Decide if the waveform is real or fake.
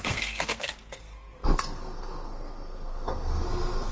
fake